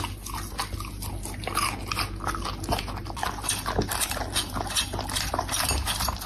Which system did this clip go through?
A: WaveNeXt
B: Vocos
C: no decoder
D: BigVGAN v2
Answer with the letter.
C